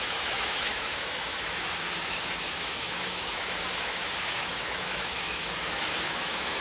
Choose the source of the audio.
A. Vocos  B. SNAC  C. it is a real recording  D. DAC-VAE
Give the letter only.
D